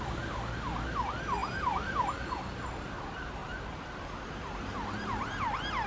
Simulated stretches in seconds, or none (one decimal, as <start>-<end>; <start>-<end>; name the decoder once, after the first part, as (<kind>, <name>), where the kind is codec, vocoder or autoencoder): 3.4-4.1 (vocoder, BigVGAN v2)